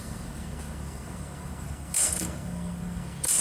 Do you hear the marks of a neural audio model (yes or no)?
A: yes